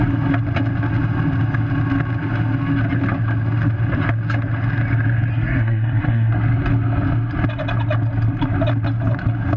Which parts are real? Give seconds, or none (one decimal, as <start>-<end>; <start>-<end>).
0.0-5.3; 6.3-9.6